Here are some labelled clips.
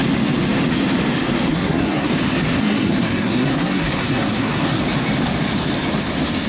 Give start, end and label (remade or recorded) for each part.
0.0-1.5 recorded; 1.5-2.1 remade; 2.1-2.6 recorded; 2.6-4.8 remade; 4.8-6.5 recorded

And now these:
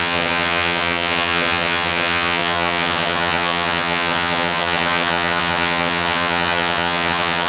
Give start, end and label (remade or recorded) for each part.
0.0-7.5 remade

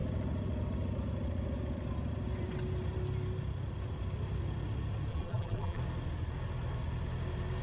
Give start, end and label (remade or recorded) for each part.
0.0-5.1 recorded; 5.1-5.8 remade; 5.8-7.6 recorded

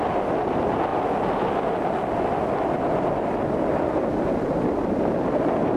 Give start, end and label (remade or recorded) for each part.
0.0-0.9 recorded; 0.9-4.1 remade; 4.1-5.8 recorded

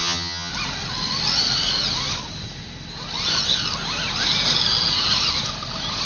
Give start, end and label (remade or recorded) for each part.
0.0-0.5 remade; 0.5-6.1 recorded

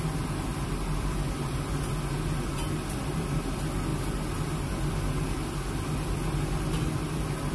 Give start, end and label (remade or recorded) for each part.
0.0-7.5 recorded